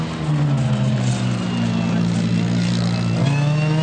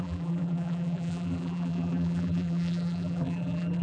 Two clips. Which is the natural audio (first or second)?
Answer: first